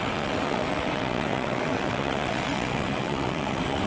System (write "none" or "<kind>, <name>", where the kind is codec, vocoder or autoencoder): vocoder, WaveNeXt